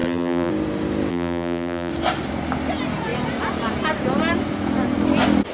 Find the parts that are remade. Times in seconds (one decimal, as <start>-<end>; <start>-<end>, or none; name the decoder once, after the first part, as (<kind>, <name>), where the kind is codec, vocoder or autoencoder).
0.0-0.5 (vocoder, BigVGAN v2); 1.1-1.9

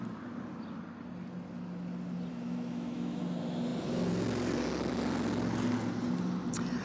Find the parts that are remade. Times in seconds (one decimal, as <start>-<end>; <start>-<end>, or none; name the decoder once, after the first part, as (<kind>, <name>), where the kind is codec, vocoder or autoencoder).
2.3-3.2 (autoencoder, DAC-VAE)

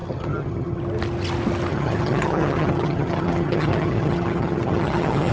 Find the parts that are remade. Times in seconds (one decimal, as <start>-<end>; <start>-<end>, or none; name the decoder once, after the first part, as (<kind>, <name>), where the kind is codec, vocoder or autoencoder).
0.0-0.8 (vocoder, HiFi-GAN); 1.7-5.3